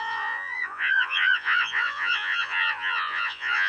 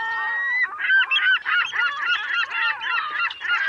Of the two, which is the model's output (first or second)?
first